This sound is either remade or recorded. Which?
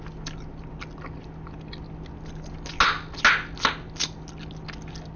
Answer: recorded